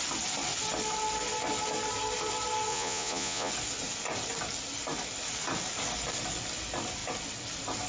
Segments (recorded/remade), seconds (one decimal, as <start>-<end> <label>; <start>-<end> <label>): 0.0-2.7 recorded; 2.7-3.5 remade; 3.5-7.9 recorded